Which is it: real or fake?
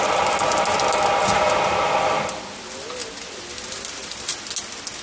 real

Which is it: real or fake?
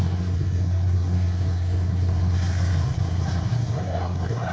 fake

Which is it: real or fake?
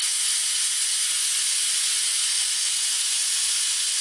fake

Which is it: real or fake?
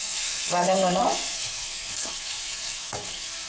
fake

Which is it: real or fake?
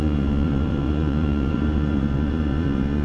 fake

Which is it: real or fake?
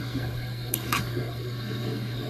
fake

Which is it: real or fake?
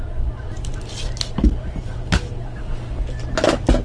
real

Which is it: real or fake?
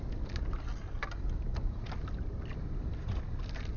real